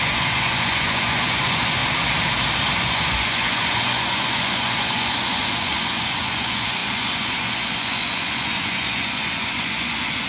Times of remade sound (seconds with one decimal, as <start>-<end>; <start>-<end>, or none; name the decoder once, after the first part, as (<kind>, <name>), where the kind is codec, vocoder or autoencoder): 0.0-1.8 (vocoder, Vocos); 2.8-10.3